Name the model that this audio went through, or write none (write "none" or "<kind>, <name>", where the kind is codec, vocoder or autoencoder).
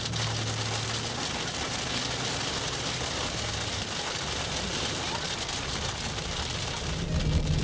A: none